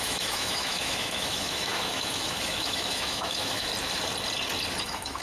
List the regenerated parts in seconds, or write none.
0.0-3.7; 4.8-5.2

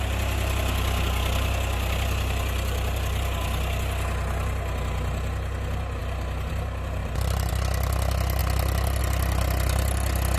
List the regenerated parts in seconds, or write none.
7.0-7.5

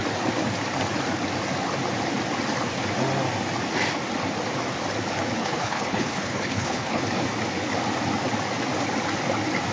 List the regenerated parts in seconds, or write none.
5.4-7.0

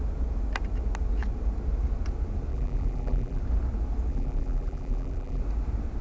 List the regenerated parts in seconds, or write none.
2.5-3.4; 4.1-5.4

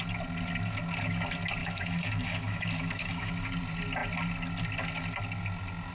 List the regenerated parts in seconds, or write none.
1.6-3.3